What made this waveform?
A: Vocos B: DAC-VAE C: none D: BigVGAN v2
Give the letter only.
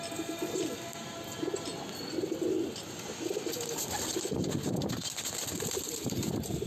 C